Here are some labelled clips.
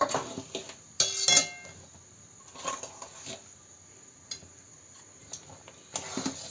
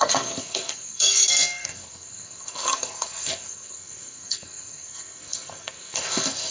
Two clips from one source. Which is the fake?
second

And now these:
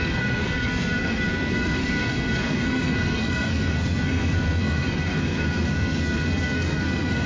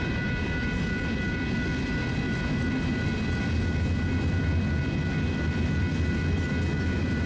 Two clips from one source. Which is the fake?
first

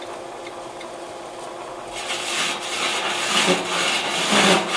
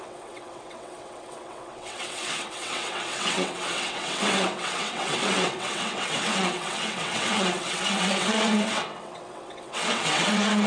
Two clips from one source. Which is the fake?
second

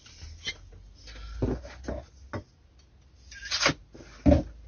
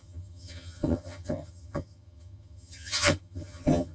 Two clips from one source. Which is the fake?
second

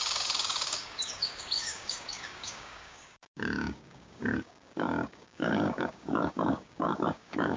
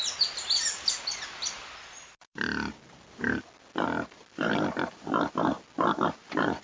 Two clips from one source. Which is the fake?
first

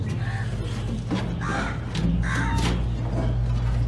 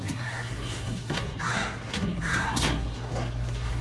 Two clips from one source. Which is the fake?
second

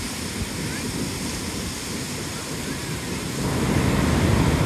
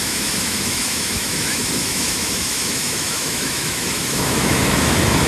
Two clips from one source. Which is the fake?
second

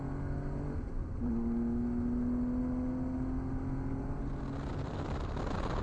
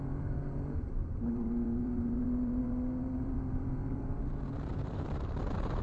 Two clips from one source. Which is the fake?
second